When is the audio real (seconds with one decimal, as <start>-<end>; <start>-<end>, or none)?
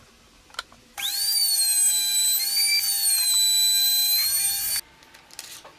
0.0-5.8